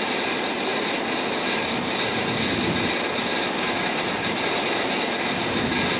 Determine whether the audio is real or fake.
real